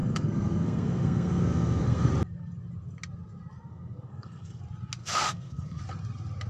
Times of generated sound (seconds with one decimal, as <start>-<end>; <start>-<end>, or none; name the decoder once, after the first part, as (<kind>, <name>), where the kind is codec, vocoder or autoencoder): 0.0-2.1 (codec, SNAC); 3.7-4.6; 5.0-5.8